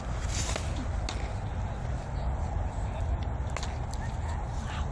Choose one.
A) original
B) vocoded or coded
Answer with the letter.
A